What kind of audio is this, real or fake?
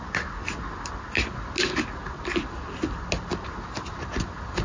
real